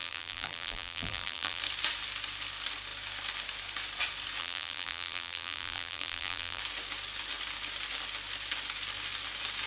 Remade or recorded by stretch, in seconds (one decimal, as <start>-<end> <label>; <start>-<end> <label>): 0.0-1.6 remade; 1.6-4.4 recorded; 4.4-6.6 remade; 6.6-9.7 recorded